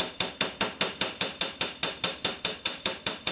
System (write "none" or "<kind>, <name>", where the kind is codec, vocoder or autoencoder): none